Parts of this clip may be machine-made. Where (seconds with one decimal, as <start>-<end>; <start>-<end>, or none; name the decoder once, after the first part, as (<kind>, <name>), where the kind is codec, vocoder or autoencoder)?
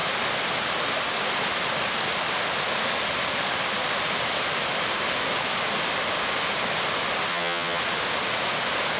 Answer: 7.3-7.8 (vocoder, HiFi-GAN)